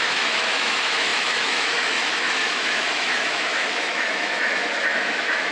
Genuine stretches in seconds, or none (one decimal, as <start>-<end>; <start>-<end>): none

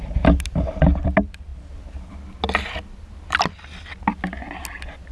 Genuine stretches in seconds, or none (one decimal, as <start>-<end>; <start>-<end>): 0.0-5.1

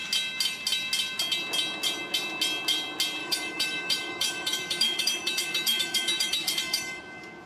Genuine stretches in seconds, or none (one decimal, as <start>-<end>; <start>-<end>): 0.0-3.2; 7.0-7.5

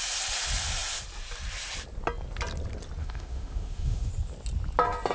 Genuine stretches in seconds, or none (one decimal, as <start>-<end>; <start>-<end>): 0.0-3.0; 4.1-5.1

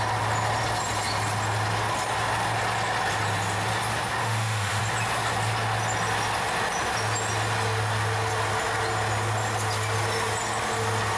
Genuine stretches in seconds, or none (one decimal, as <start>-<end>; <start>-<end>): 0.0-4.2; 4.8-11.2